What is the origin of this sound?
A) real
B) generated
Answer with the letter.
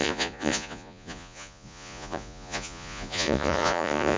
B